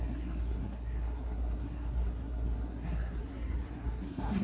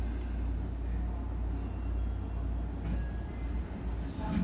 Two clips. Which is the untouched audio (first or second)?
second